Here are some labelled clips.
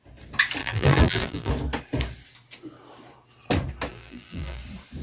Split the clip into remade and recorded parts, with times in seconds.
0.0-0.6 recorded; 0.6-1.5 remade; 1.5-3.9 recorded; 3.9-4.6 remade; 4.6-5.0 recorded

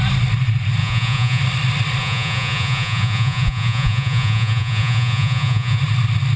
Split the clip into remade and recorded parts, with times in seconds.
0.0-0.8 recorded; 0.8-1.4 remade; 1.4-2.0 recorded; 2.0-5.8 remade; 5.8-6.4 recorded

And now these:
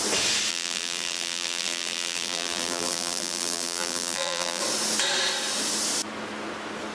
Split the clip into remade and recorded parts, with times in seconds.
0.0-0.5 recorded; 0.5-4.6 remade; 4.6-6.9 recorded

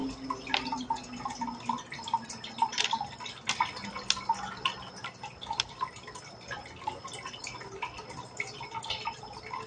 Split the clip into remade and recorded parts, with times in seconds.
0.0-9.7 recorded

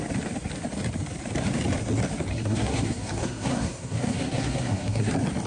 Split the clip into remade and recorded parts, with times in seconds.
0.0-2.3 recorded; 2.3-5.1 remade; 5.1-5.5 recorded